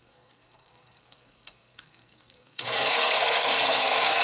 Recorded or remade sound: remade